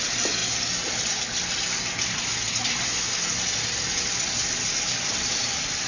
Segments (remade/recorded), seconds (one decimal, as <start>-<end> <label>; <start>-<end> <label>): 0.0-5.9 recorded